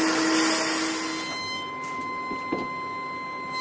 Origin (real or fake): real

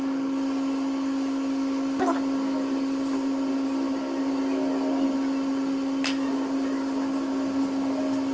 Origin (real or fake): real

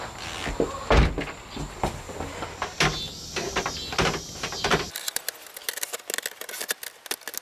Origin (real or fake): real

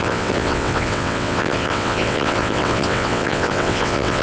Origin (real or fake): fake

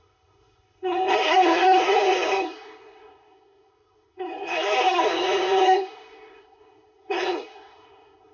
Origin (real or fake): fake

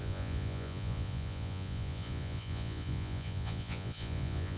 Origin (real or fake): fake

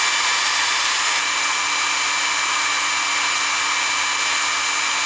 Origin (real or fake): real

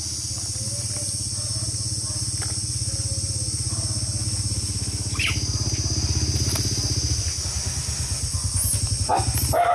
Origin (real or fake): real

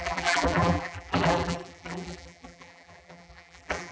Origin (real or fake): fake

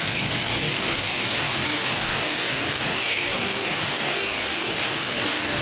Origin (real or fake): fake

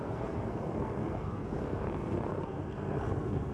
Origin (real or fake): fake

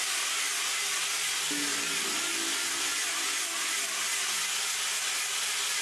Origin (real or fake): real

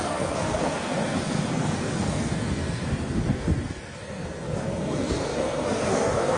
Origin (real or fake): fake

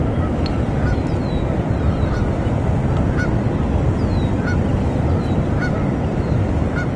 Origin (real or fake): real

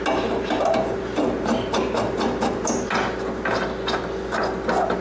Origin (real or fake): real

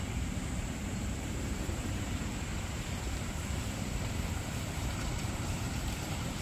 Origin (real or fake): fake